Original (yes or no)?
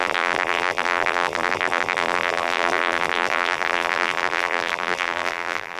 no